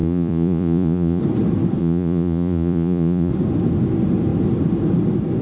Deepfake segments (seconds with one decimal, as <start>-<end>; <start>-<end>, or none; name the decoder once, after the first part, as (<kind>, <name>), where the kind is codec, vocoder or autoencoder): 0.0-1.2 (vocoder, Vocos); 1.8-3.3